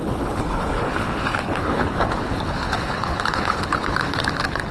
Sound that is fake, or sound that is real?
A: fake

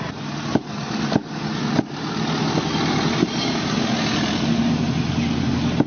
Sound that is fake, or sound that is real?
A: real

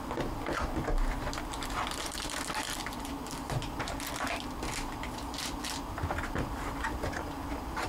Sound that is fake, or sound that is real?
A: real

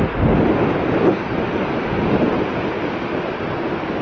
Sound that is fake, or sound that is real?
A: real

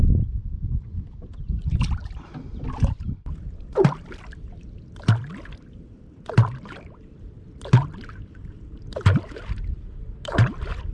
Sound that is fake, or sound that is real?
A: fake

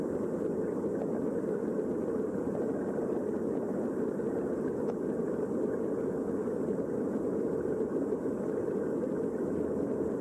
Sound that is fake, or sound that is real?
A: real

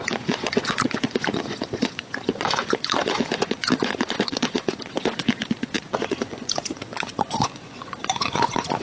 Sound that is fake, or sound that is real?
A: fake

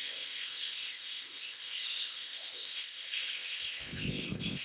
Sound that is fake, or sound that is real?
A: fake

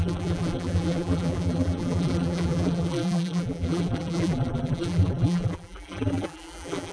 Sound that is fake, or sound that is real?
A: fake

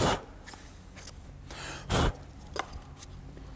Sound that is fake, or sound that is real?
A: real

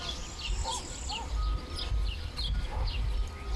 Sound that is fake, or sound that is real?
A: real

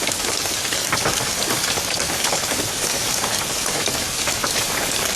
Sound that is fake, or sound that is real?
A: fake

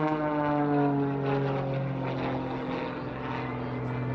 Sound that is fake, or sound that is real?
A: real